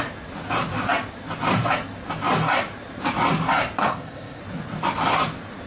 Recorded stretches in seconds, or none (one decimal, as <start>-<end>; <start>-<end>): 0.0-3.8; 4.4-5.7